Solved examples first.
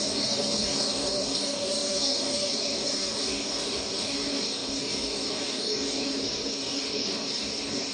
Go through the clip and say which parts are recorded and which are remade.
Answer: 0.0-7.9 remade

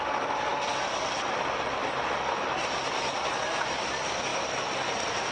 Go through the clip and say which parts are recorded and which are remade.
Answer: 0.0-0.5 recorded; 0.5-1.3 remade; 1.3-4.3 recorded; 4.3-5.3 remade

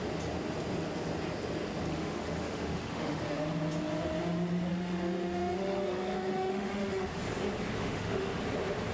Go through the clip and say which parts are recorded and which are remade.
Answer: 0.0-1.9 recorded; 1.9-3.2 remade; 3.2-4.7 recorded; 4.7-7.2 remade; 7.2-7.8 recorded; 7.8-8.4 remade; 8.4-8.9 recorded

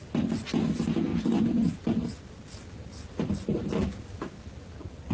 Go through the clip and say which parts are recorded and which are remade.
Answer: 0.0-5.1 recorded